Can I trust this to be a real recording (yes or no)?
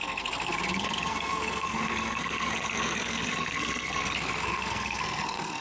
no